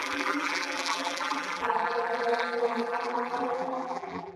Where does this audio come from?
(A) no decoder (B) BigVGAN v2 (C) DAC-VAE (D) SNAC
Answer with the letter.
B